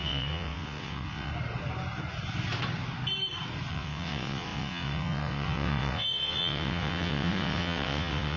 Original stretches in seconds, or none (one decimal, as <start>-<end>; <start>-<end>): 1.3-3.7